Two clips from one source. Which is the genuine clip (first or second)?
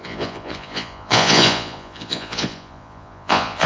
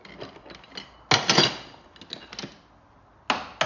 second